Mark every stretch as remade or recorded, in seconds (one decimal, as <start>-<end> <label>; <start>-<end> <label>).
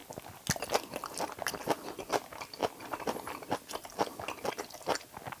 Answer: 0.0-5.4 recorded